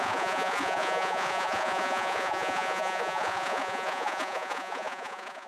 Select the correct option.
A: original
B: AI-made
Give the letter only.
B